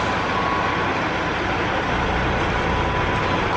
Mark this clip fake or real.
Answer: real